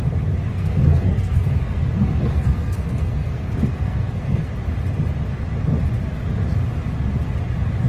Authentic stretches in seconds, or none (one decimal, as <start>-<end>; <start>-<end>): 0.0-0.5; 4.5-7.9